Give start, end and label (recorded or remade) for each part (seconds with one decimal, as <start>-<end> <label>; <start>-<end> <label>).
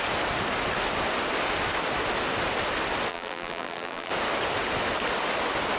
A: 0.0-3.1 recorded; 3.1-4.1 remade; 4.1-5.8 recorded